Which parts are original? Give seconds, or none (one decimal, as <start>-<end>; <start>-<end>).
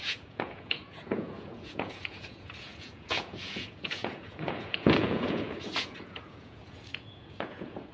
none